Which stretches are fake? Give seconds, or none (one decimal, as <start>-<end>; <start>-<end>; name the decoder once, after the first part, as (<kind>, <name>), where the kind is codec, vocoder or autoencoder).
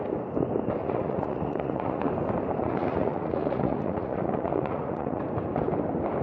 0.8-2.1 (vocoder, Vocos); 2.6-5.2